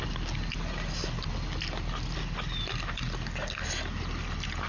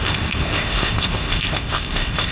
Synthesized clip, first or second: second